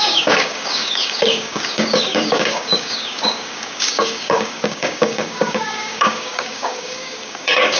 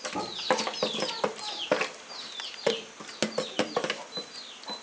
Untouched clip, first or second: second